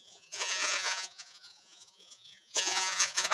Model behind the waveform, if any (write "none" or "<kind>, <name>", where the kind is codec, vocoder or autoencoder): vocoder, Vocos